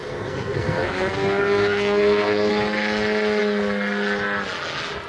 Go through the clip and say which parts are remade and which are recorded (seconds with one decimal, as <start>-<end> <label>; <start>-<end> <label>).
0.0-2.5 remade; 2.5-5.1 recorded